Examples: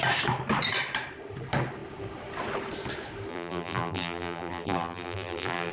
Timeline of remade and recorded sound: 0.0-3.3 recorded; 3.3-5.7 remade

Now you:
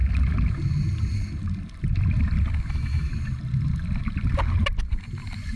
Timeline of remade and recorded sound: 0.0-2.7 recorded; 2.7-3.1 remade; 3.1-5.6 recorded

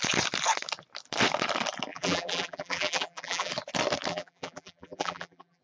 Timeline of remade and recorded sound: 0.0-1.9 recorded; 1.9-3.5 remade; 3.5-4.1 recorded; 4.1-5.6 remade

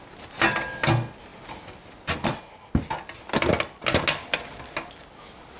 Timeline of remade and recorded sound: 0.0-5.6 recorded